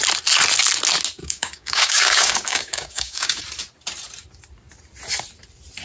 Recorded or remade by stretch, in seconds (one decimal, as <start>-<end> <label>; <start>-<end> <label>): 0.0-1.2 recorded; 1.2-3.4 remade; 3.4-5.8 recorded